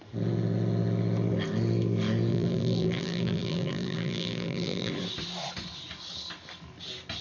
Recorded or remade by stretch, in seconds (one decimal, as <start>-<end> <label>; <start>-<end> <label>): 0.0-2.3 recorded; 2.3-4.9 remade; 4.9-7.2 recorded